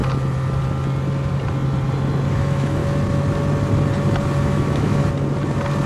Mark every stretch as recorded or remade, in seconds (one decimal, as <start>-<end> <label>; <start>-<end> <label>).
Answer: 0.0-2.3 recorded; 2.3-2.8 remade; 2.8-4.4 recorded; 4.4-5.0 remade; 5.0-5.9 recorded